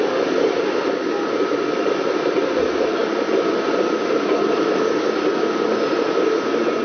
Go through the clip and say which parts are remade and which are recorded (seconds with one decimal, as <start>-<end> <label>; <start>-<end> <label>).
0.0-6.8 recorded